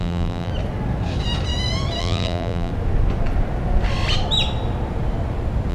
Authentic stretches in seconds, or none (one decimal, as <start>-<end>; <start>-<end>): 0.5-2.0; 2.7-5.7